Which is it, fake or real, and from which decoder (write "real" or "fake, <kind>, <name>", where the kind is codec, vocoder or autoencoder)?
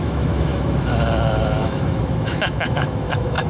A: fake, autoencoder, DAC-VAE